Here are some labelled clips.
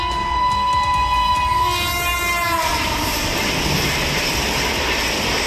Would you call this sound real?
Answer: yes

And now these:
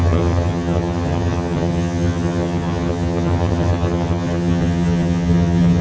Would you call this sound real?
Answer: no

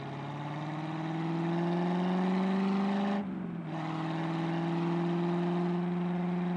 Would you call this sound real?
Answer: yes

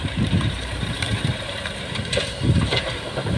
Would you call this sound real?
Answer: no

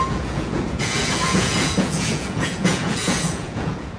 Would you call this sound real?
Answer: no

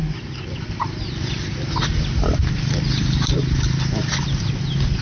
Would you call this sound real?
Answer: yes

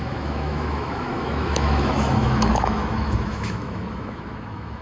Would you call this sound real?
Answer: no